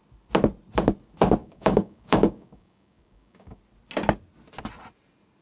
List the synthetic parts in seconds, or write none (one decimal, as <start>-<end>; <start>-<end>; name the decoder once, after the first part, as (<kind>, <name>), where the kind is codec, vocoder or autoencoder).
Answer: 1.4-3.6 (codec, DAC)